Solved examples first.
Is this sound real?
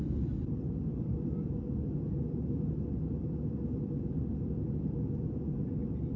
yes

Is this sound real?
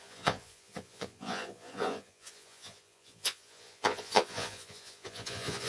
no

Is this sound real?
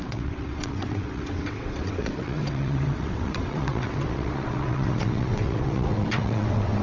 no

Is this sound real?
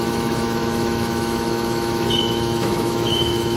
no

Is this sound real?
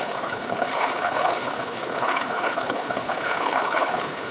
no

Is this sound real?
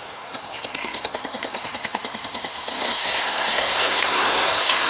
no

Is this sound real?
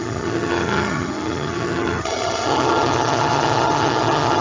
no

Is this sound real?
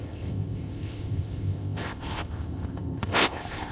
no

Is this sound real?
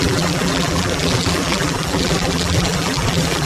no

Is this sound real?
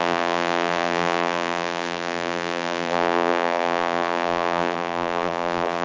no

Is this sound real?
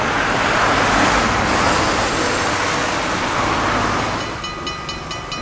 yes